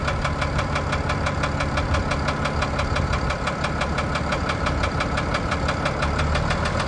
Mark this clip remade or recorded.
recorded